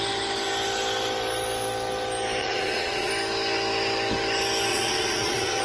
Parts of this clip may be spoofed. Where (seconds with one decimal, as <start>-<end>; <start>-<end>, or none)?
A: 2.4-3.1; 4.7-5.6